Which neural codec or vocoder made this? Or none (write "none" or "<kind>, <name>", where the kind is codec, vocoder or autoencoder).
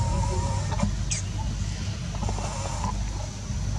none